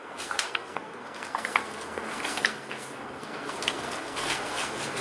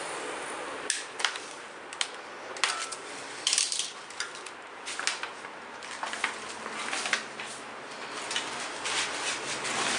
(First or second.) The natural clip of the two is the second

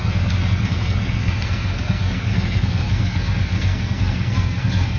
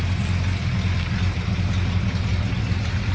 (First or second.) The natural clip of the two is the second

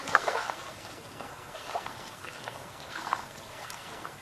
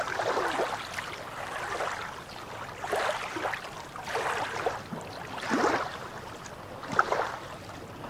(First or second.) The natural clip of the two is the second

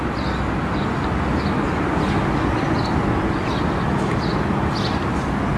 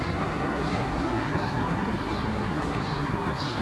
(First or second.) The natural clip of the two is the first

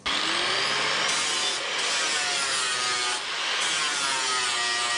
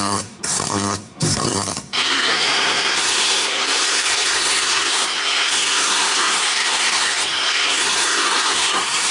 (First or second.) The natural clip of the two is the first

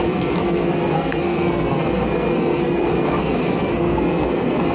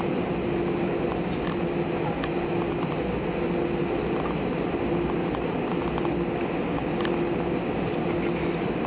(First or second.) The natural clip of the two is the second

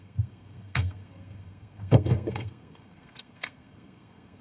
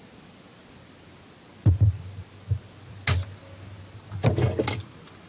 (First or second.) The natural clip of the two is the second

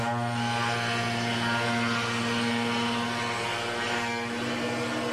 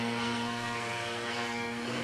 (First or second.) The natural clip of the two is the first